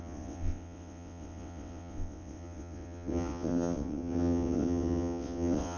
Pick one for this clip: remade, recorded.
remade